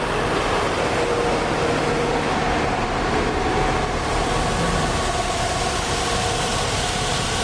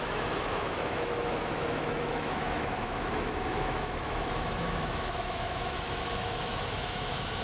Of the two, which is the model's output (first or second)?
second